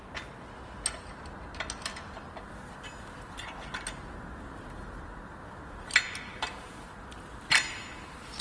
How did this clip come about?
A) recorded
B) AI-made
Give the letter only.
A